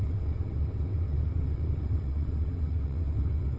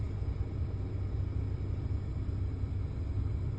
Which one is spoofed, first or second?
first